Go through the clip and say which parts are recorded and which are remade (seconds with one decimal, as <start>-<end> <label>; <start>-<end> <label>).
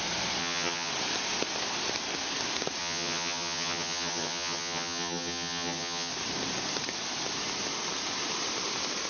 0.0-0.4 recorded; 0.4-0.9 remade; 0.9-2.8 recorded; 2.8-6.1 remade; 6.1-9.1 recorded